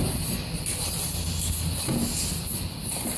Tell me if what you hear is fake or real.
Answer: real